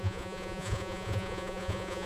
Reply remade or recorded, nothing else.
remade